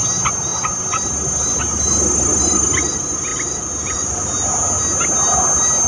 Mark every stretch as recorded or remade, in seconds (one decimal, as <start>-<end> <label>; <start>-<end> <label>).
0.0-5.9 recorded